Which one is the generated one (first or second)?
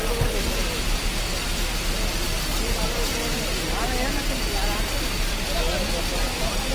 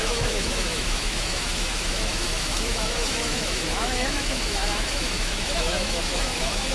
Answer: second